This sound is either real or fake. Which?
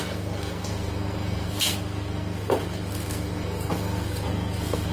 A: fake